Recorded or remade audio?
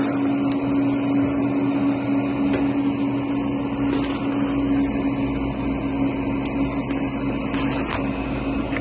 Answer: recorded